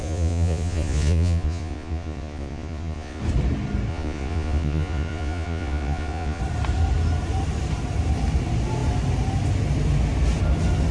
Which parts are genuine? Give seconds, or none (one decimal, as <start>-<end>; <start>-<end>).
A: 3.2-3.9; 6.4-10.9